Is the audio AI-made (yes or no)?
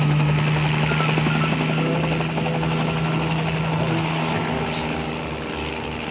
no